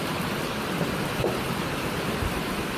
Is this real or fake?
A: fake